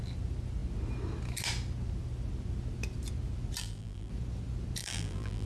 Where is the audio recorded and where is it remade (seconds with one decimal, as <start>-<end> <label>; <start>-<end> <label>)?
0.0-3.6 recorded; 3.6-4.1 remade; 4.1-4.8 recorded; 4.8-5.5 remade